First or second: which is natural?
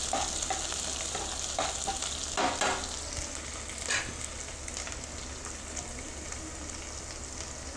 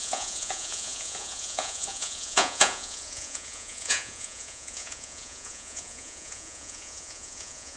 first